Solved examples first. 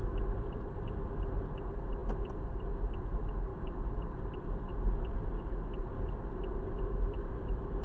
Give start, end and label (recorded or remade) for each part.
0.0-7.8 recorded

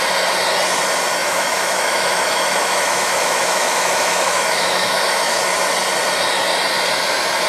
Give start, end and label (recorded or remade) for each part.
0.0-1.2 recorded; 1.2-5.4 remade; 5.4-7.5 recorded